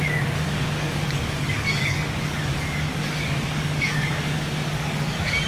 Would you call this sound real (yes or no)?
no